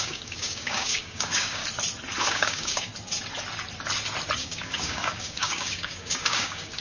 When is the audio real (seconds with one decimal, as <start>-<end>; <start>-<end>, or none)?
1.6-2.2; 2.9-4.4